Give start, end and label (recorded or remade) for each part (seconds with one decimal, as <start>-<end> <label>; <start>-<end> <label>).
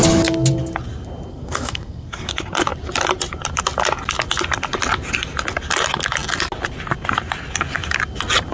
0.0-1.3 recorded; 1.3-2.3 remade; 2.3-8.5 recorded